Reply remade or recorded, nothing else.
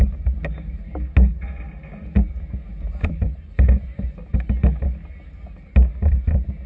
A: recorded